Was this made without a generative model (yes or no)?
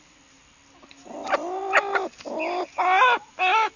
yes